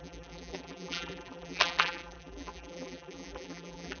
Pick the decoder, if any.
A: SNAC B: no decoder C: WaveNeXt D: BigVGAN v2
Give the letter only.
D